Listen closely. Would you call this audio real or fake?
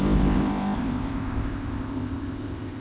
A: fake